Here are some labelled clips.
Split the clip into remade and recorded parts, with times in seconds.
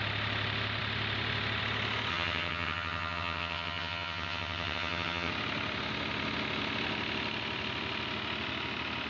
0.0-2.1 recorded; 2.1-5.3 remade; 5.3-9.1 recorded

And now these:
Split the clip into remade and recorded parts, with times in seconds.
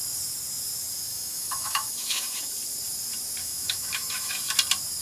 0.0-1.1 recorded; 1.1-2.5 remade; 2.5-3.4 recorded; 3.4-4.3 remade; 4.3-5.0 recorded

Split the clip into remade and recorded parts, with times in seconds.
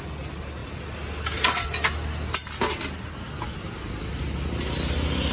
0.0-5.3 recorded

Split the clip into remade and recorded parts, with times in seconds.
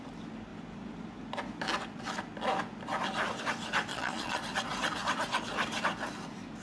0.0-3.9 recorded; 3.9-4.4 remade; 4.4-6.6 recorded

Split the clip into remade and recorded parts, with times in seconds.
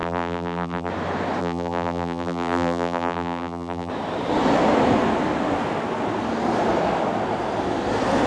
0.0-0.9 remade; 0.9-1.4 recorded; 1.4-3.9 remade; 3.9-8.3 recorded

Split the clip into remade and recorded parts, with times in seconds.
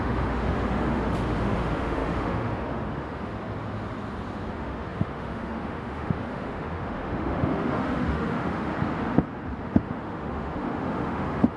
0.0-3.3 remade; 3.3-4.5 recorded; 4.5-8.7 remade; 8.7-9.6 recorded; 9.6-11.6 remade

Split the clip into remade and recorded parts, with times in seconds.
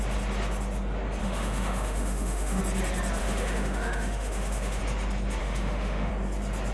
0.0-1.2 recorded; 1.2-2.6 remade; 2.6-3.2 recorded; 3.2-4.8 remade; 4.8-5.4 recorded; 5.4-6.1 remade; 6.1-6.7 recorded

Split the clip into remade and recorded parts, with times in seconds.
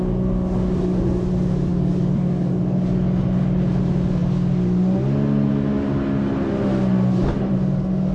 0.0-1.7 recorded; 1.7-2.5 remade; 2.5-8.1 recorded